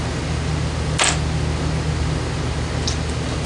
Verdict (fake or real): real